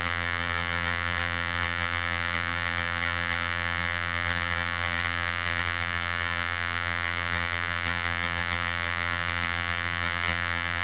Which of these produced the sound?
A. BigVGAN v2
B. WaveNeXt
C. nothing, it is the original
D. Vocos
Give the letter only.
A